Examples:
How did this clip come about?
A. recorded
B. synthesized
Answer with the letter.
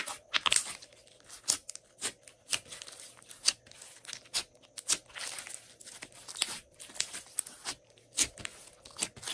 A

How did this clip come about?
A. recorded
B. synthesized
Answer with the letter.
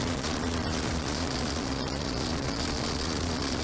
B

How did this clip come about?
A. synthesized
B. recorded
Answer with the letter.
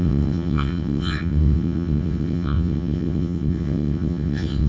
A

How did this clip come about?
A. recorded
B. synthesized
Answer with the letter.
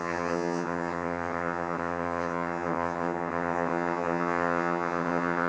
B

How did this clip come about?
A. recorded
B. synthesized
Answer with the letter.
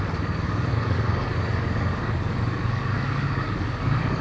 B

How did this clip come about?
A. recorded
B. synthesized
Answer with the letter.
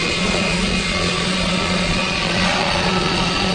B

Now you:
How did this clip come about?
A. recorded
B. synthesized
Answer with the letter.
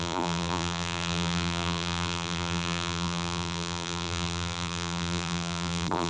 B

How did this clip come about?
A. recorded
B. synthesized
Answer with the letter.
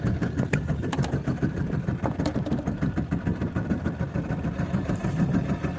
B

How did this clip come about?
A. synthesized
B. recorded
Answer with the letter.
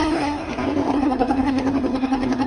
A